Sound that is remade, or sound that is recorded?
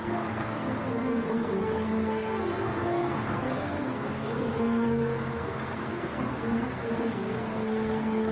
remade